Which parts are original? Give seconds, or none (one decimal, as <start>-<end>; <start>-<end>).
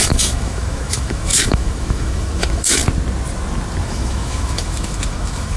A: 2.8-3.8